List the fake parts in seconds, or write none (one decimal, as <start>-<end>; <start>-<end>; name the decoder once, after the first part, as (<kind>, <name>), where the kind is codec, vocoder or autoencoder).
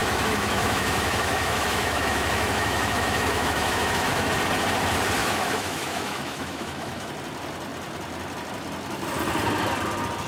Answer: 0.0-4.3 (autoencoder, DAC-VAE); 5.2-7.1